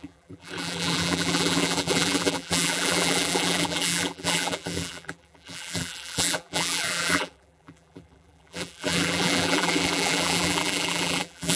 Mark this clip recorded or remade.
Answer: remade